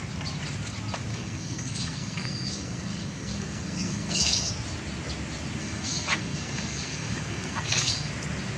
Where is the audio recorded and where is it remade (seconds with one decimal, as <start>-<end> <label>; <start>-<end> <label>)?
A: 0.0-1.1 recorded; 1.1-4.5 remade; 4.5-5.6 recorded; 5.6-8.1 remade; 8.1-8.6 recorded